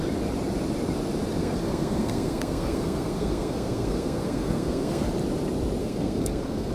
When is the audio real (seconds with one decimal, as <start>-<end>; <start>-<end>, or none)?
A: 0.0-1.4; 5.1-5.8